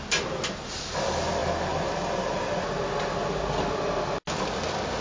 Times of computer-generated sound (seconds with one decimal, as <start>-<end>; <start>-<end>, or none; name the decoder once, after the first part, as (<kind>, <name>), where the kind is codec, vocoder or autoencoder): none